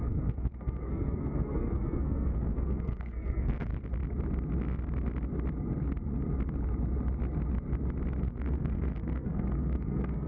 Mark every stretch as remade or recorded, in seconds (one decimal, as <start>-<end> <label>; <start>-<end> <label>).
0.0-3.7 remade; 3.7-8.2 recorded; 8.2-10.3 remade